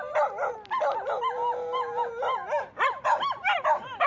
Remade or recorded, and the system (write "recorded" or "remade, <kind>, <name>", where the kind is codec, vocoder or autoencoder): recorded